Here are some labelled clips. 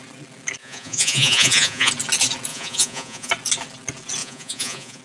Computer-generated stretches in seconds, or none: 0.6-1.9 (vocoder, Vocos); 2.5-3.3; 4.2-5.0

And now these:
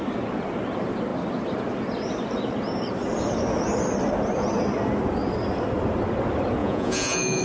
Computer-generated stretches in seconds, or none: 6.6-7.4 (vocoder, Vocos)

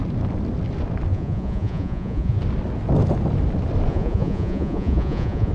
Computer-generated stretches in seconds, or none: 1.1-2.4 (vocoder, Vocos); 3.9-5.5

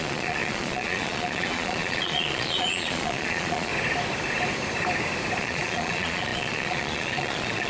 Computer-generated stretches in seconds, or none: 0.0-3.7 (vocoder, Vocos); 5.4-7.7

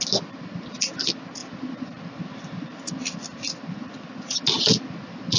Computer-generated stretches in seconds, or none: none

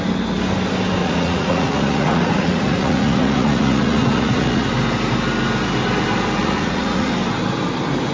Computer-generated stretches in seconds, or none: 1.0-4.7 (vocoder, Vocos); 6.4-7.1

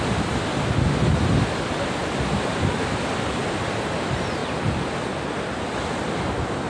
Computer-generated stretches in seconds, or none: none

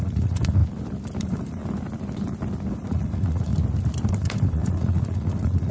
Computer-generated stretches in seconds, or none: 0.0-0.6 (vocoder, Vocos); 1.2-1.6; 2.7-3.5; 4.1-5.7